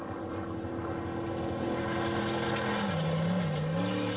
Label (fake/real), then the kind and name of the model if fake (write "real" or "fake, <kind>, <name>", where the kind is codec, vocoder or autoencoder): real